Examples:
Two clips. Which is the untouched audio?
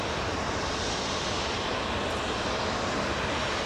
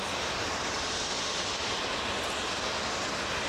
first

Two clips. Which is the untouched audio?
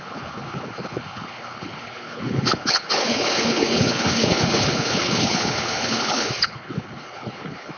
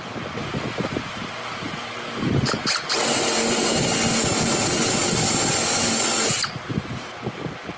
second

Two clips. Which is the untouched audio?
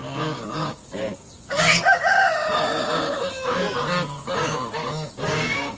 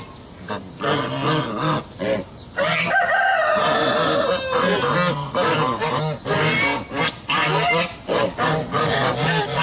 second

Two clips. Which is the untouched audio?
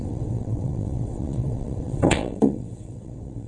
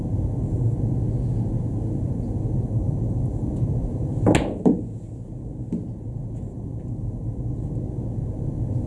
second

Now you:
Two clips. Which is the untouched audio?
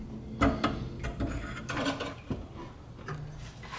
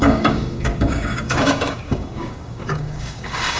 first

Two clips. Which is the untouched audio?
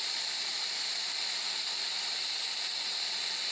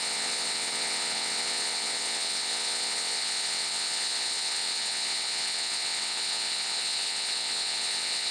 first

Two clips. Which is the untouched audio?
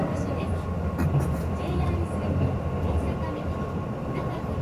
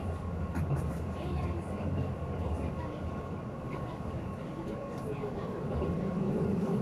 first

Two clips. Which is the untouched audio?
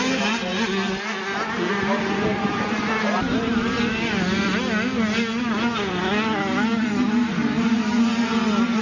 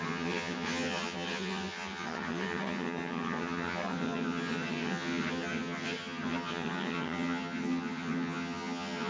first